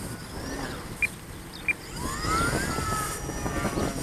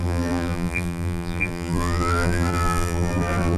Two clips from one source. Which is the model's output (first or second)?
second